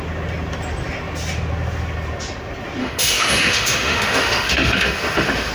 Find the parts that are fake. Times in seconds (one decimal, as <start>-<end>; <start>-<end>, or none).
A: 2.8-5.5